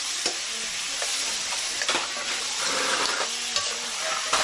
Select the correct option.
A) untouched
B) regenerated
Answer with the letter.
A